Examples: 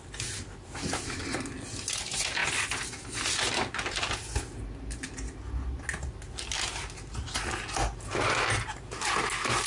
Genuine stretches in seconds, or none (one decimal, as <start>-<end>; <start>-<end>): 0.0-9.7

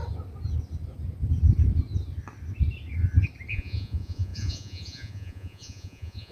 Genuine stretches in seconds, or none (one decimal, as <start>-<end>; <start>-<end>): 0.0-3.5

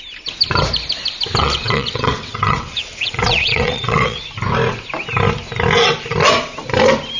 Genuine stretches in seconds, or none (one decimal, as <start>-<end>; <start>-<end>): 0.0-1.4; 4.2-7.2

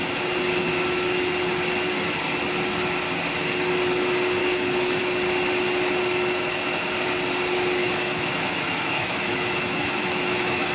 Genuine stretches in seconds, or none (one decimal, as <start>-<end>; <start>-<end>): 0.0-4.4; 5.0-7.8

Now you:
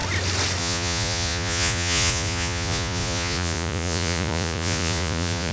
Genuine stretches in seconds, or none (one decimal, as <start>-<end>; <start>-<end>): 0.0-0.6

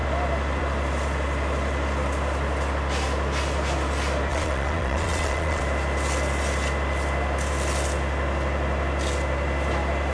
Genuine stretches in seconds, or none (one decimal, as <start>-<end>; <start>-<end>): 0.0-4.3; 5.6-10.1

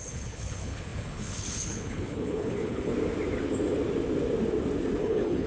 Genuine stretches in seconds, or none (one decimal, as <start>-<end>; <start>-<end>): 2.9-5.0

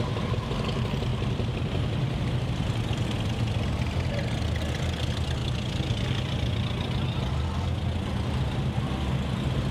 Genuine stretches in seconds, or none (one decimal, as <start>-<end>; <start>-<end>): 0.0-5.4; 6.6-9.7